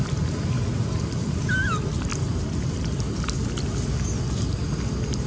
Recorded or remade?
recorded